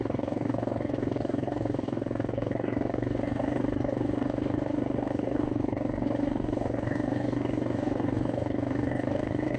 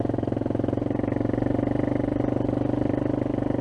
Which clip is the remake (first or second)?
first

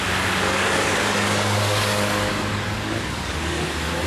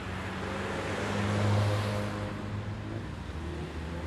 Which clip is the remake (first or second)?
first